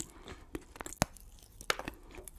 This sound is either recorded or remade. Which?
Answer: recorded